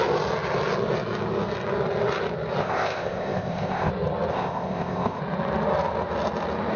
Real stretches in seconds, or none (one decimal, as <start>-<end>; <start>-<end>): 0.0-2.6; 3.9-4.3; 5.2-6.8